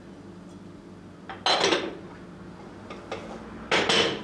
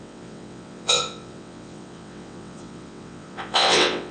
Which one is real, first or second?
first